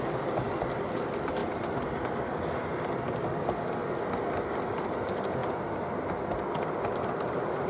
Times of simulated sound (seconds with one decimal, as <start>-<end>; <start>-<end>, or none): none